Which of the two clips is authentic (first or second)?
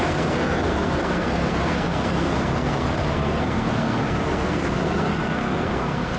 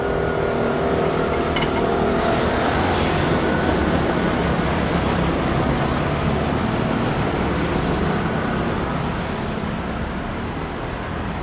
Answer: second